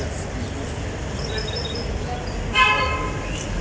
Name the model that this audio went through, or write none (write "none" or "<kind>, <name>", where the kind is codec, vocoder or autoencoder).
none